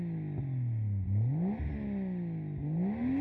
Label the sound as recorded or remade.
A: recorded